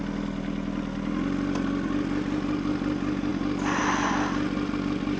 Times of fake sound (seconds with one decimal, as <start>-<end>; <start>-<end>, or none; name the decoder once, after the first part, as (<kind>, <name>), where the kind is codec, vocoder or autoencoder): none